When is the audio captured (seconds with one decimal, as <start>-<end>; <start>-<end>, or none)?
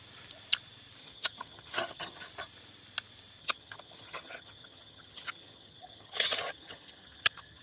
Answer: 0.0-1.0; 2.3-3.4